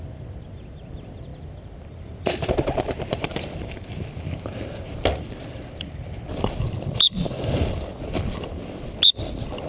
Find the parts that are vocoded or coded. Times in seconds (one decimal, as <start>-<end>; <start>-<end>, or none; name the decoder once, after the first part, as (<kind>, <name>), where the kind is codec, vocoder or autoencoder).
0.0-7.9 (vocoder, BigVGAN v2)